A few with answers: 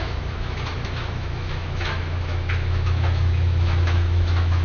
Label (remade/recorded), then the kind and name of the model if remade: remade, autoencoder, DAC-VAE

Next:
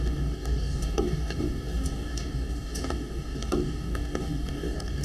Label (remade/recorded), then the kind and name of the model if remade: remade, codec, DAC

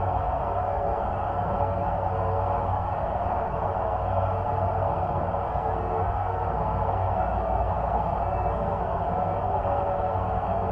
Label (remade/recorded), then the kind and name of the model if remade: remade, codec, SNAC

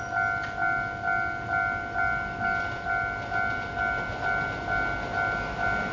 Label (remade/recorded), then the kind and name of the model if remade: recorded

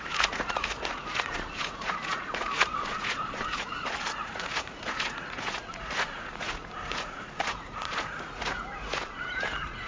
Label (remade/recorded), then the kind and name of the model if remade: remade, vocoder, Vocos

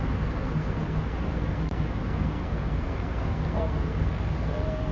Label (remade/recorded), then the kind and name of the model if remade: remade, codec, SNAC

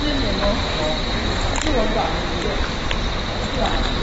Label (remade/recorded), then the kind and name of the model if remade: recorded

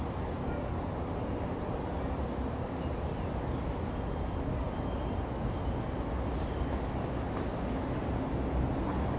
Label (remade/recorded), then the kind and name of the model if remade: recorded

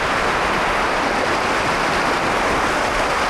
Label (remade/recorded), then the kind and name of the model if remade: recorded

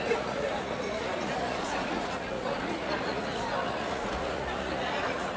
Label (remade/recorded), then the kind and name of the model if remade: remade, vocoder, Vocos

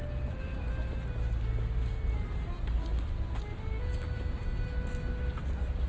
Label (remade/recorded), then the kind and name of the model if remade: recorded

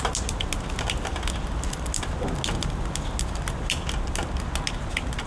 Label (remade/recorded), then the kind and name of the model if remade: recorded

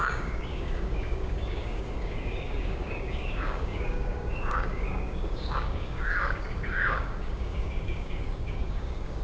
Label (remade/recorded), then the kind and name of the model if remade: remade, codec, DAC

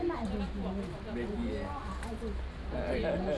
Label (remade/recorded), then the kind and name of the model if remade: recorded